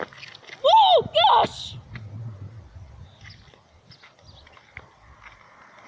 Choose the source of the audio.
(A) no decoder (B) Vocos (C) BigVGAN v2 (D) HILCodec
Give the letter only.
A